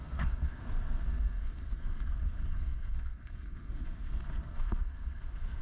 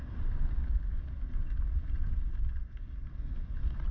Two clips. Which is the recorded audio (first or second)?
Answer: second